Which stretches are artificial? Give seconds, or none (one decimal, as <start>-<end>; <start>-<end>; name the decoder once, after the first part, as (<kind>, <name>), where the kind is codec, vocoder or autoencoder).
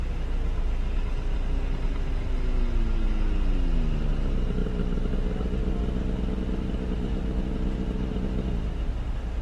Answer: none